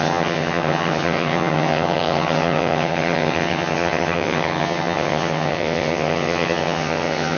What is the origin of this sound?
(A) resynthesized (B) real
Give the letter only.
A